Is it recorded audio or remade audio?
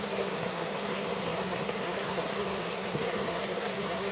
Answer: remade